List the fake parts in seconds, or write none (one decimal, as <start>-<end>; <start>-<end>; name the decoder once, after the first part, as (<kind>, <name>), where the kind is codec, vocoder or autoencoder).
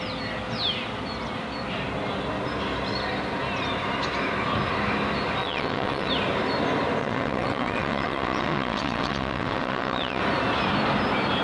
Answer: 5.4-6.1 (vocoder, WaveNeXt); 7.0-10.2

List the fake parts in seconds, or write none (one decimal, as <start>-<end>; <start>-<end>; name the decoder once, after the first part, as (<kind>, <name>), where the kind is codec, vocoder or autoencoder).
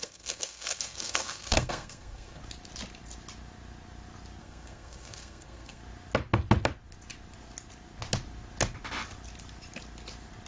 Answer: 0.0-2.4 (codec, SNAC); 4.4-5.8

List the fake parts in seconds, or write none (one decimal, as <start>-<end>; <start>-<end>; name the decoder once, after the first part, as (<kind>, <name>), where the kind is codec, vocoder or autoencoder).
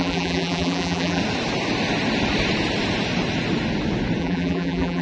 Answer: 0.0-1.2 (vocoder, BigVGAN v2); 4.2-5.0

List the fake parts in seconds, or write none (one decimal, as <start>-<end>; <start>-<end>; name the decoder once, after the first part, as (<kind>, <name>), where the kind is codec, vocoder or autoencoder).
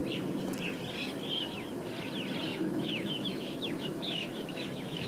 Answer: 2.5-5.1 (autoencoder, DAC-VAE)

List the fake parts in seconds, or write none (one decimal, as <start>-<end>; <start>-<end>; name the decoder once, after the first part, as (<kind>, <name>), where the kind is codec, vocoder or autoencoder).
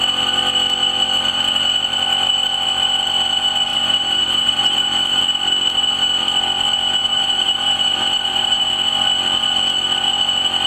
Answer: 3.7-5.2 (vocoder, BigVGAN v2); 7.0-8.6